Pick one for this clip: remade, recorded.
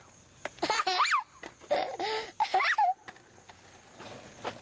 recorded